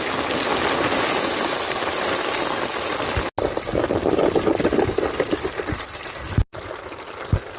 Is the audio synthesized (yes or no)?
no